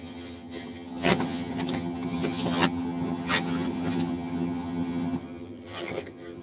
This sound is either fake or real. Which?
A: fake